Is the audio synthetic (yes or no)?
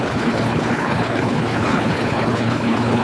yes